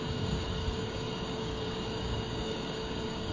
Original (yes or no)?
no